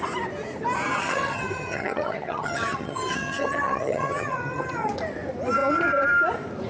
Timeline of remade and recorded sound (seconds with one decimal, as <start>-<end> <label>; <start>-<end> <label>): 0.0-0.9 recorded; 0.9-4.9 remade; 4.9-6.7 recorded